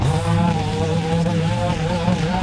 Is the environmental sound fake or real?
fake